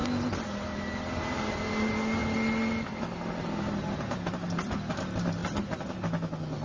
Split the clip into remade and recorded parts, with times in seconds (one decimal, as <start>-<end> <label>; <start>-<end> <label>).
0.0-6.6 recorded